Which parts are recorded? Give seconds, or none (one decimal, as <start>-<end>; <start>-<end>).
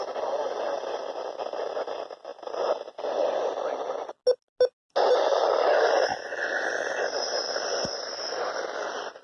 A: 0.0-9.2